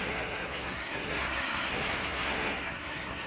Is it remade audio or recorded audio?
remade